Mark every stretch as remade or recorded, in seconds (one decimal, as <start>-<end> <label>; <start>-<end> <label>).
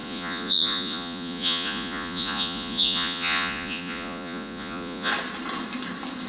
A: 0.0-5.1 remade; 5.1-6.3 recorded